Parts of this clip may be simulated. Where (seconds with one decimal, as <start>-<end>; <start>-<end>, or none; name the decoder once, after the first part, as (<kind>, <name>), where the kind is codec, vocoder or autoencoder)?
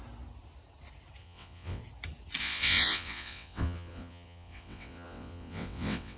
1.2-1.8 (vocoder, WaveNeXt); 2.4-6.2